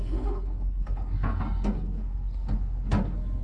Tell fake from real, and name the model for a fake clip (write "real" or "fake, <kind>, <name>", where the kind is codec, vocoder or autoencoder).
fake, codec, SNAC